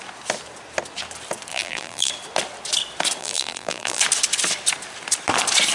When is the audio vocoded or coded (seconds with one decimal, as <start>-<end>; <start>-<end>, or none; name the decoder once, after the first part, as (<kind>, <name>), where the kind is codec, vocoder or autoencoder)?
1.5-2.1 (vocoder, BigVGAN v2); 3.2-4.0